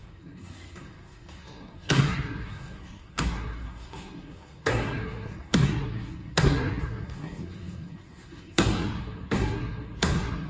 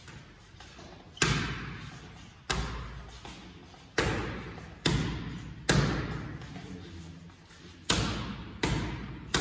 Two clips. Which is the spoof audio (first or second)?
first